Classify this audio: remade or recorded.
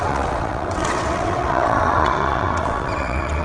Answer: remade